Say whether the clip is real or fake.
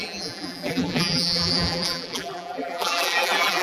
fake